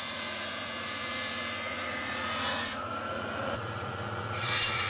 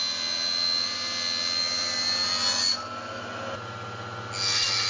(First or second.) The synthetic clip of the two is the first